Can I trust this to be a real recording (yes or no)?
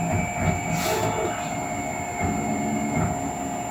yes